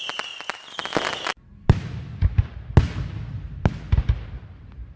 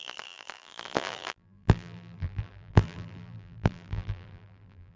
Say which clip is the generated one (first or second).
second